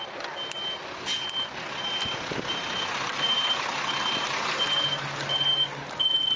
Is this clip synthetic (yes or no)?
no